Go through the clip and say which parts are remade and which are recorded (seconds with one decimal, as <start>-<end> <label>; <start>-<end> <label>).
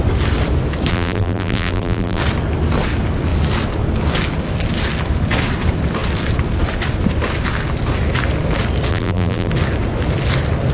0.0-0.9 recorded; 0.9-2.2 remade; 2.2-8.9 recorded; 8.9-9.5 remade; 9.5-10.7 recorded